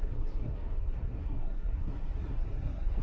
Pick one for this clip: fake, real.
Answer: fake